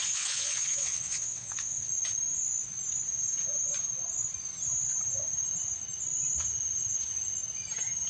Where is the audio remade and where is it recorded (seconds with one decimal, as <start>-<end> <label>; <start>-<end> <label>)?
0.0-1.9 remade; 1.9-8.1 recorded